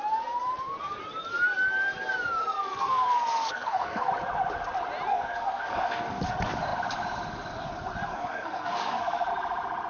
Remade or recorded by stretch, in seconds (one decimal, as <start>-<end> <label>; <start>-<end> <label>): 0.0-2.4 recorded; 2.4-4.1 remade; 4.1-5.1 recorded; 5.1-6.2 remade; 6.2-8.1 recorded; 8.1-9.3 remade; 9.3-9.9 recorded